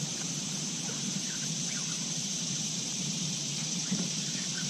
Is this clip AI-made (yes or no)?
yes